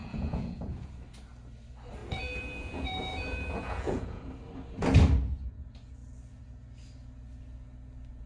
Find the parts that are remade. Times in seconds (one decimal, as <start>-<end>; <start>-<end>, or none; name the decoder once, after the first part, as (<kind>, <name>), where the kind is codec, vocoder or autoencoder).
0.0-0.9 (vocoder, Vocos); 2.0-4.2